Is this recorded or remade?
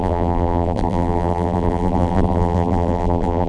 remade